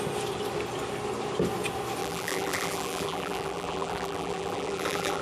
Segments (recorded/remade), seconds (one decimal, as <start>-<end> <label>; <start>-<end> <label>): 0.0-2.0 recorded; 2.0-5.2 remade